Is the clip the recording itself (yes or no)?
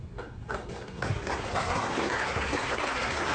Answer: no